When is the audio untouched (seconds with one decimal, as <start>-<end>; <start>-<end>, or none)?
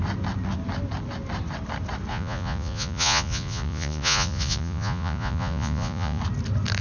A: 0.0-2.1; 6.2-6.8